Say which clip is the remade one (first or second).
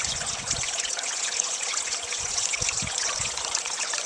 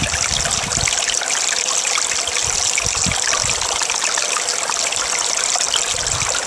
first